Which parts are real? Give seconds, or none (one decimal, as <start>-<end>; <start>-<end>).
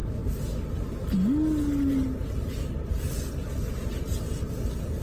0.0-5.0